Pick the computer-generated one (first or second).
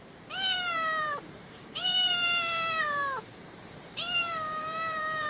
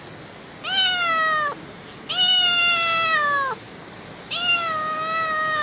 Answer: first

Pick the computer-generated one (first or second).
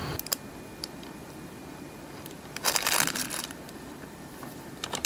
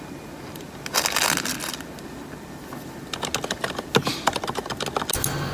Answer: first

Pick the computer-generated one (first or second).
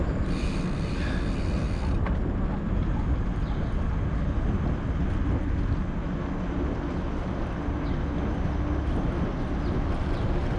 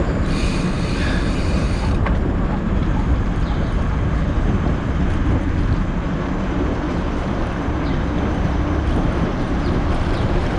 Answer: second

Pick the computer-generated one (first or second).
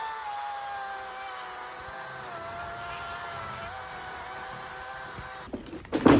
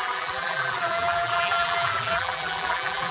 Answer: second